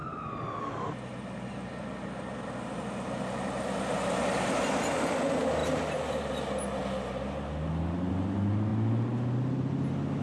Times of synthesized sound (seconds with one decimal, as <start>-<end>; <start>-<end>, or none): 5.6-6.3